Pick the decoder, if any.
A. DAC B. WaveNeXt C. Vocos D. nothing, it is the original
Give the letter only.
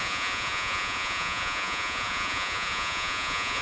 C